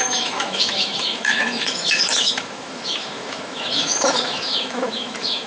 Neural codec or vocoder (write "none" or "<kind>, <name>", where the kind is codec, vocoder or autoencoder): autoencoder, DAC-VAE